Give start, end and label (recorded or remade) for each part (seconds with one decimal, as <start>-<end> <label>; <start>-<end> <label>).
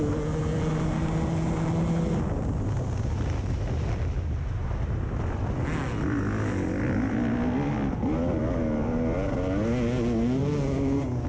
0.0-11.3 recorded